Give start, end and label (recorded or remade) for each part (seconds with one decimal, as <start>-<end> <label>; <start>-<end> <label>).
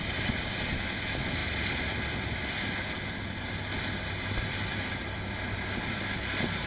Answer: 0.0-6.7 recorded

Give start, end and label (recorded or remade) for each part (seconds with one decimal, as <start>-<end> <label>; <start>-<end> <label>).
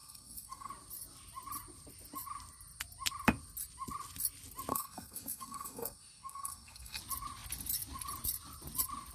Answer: 0.0-0.7 remade; 0.7-4.7 recorded; 4.7-7.0 remade; 7.0-9.1 recorded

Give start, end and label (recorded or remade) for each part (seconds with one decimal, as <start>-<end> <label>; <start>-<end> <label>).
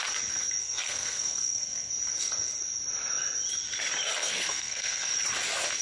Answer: 0.0-0.6 recorded; 0.6-1.9 remade; 1.9-4.2 recorded; 4.2-5.1 remade; 5.1-5.8 recorded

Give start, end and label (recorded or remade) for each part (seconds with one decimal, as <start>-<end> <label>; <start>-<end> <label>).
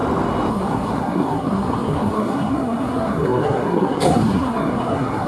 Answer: 0.0-0.5 recorded; 0.5-5.3 remade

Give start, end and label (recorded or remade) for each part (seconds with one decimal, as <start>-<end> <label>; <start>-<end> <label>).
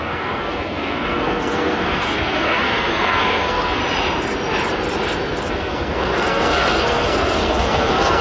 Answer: 0.0-3.8 remade; 3.8-5.5 recorded; 5.5-8.2 remade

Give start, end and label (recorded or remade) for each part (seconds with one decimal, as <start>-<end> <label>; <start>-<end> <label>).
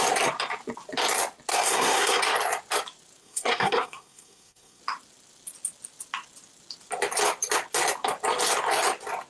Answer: 0.0-1.5 recorded; 1.5-2.2 remade; 2.2-3.2 recorded; 3.2-4.8 remade; 4.8-9.3 recorded